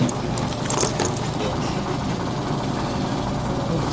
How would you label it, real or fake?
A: real